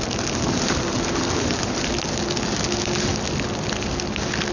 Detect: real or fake real